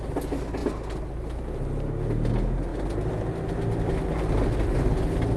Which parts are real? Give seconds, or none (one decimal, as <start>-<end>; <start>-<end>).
0.0-5.4